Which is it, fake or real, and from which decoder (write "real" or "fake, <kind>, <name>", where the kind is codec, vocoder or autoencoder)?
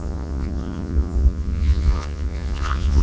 fake, vocoder, Vocos